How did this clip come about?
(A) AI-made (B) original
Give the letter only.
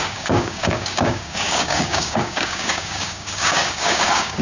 A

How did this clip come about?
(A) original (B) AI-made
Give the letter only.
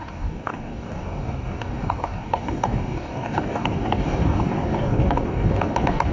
B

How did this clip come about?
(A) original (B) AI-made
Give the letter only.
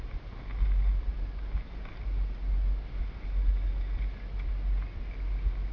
A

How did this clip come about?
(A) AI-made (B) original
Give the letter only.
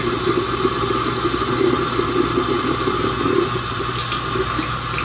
B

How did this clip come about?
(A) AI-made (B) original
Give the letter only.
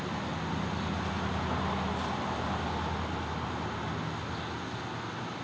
B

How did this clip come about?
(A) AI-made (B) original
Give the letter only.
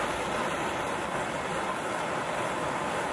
B